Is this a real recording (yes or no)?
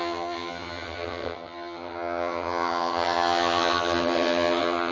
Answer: no